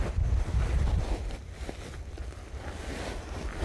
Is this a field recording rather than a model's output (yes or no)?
no